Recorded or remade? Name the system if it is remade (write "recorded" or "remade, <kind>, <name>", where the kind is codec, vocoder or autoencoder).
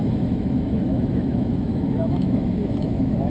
remade, autoencoder, DAC-VAE